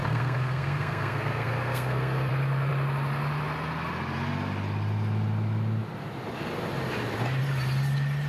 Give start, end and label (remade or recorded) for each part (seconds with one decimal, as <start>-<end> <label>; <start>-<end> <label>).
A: 0.0-2.3 remade; 2.3-8.3 recorded